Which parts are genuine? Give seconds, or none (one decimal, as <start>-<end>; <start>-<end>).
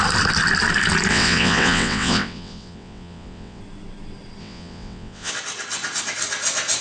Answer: 0.0-1.1; 3.6-4.4; 5.3-6.8